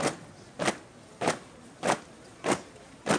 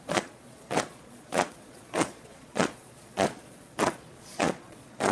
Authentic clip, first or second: first